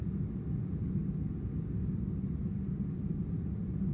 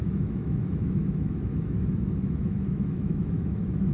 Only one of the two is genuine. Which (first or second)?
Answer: first